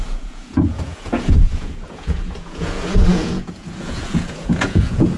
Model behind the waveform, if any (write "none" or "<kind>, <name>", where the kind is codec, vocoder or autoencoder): vocoder, Vocos